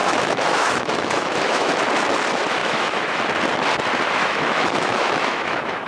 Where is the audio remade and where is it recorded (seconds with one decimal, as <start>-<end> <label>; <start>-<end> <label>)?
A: 0.0-1.7 remade; 1.7-2.6 recorded; 2.6-3.2 remade; 3.2-4.2 recorded; 4.2-5.9 remade